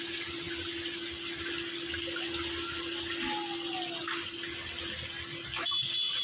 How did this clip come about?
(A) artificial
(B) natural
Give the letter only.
B